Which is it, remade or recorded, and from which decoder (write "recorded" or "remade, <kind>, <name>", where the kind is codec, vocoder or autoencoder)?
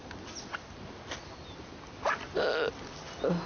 recorded